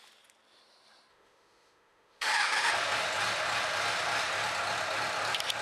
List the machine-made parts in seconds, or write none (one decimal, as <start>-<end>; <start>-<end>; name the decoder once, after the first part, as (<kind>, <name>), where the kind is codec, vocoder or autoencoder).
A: 1.1-2.7 (autoencoder, DAC-VAE)